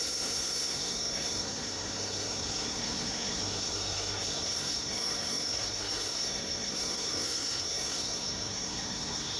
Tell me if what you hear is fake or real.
fake